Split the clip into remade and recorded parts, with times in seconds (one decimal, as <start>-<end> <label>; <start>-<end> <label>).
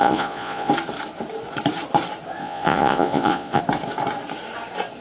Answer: 0.0-0.7 remade; 0.7-2.4 recorded; 2.4-3.6 remade; 3.6-5.0 recorded